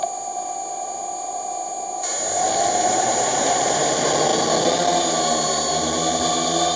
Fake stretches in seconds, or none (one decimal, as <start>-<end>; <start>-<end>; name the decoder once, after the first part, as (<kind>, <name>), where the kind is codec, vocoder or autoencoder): none